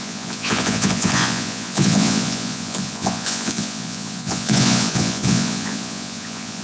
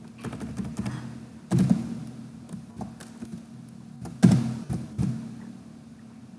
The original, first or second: second